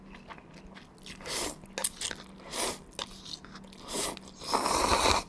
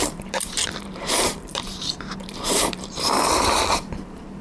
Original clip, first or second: first